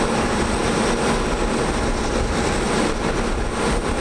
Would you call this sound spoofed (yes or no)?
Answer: no